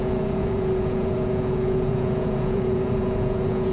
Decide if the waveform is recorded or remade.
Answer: remade